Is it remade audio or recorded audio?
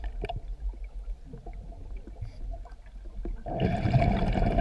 recorded